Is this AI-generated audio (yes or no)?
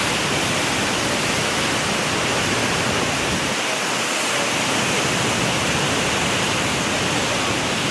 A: no